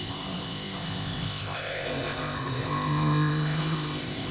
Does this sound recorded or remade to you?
remade